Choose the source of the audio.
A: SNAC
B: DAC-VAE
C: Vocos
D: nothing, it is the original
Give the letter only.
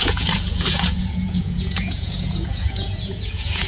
C